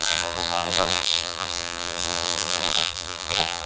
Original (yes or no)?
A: no